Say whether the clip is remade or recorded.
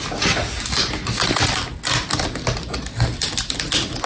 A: recorded